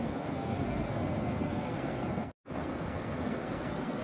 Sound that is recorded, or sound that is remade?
remade